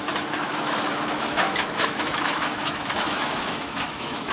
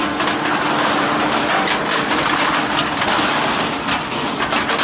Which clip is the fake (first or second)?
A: first